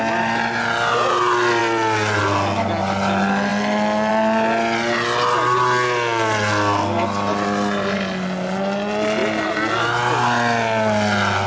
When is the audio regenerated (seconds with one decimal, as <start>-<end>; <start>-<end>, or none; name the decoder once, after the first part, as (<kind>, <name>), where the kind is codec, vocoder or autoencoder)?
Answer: none